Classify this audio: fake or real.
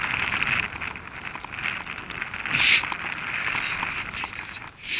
real